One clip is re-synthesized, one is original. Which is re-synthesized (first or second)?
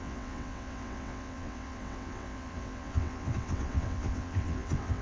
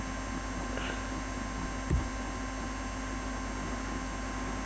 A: first